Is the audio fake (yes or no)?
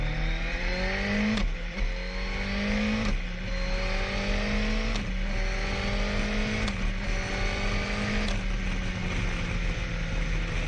no